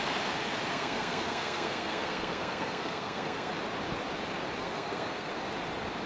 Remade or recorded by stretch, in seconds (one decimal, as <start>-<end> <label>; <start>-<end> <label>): 0.0-0.7 recorded; 0.7-3.5 remade; 3.5-4.6 recorded; 4.6-5.3 remade; 5.3-6.1 recorded